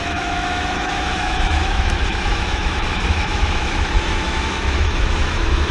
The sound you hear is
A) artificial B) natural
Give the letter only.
A